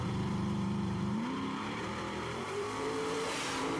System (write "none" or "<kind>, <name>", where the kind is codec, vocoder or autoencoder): vocoder, BigVGAN v2